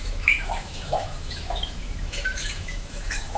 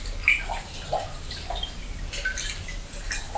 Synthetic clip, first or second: first